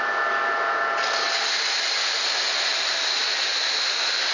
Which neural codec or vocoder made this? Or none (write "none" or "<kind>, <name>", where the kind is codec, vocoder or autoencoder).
none